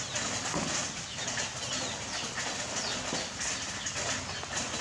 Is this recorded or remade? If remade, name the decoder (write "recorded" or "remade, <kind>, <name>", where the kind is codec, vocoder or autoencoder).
recorded